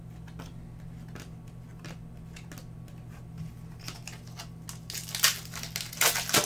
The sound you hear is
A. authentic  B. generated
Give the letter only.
A